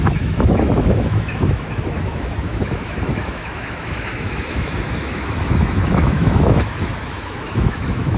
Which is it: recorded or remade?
remade